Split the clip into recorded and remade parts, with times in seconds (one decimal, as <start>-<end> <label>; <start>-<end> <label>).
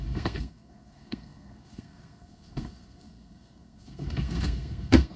0.0-5.2 remade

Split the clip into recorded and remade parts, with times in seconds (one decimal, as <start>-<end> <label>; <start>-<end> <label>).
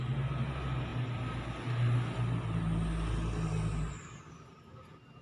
0.0-5.2 recorded